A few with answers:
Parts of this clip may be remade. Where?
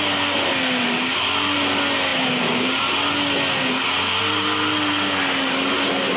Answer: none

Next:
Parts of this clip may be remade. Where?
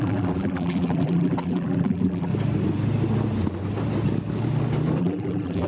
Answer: 0.0-2.3; 5.0-5.7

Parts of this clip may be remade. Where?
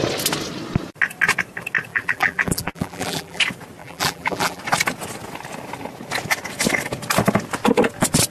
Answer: 1.9-3.4; 3.8-4.6